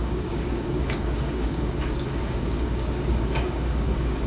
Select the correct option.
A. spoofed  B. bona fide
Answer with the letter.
A